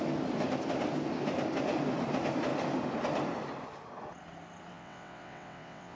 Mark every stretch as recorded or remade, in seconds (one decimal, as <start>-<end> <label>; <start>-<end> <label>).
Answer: 0.0-4.7 recorded; 4.7-6.0 remade